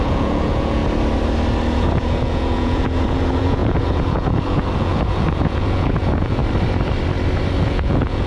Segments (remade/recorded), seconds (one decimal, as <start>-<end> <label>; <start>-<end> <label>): 0.0-0.8 remade; 0.8-1.7 recorded; 1.7-6.4 remade; 6.4-7.6 recorded; 7.6-8.3 remade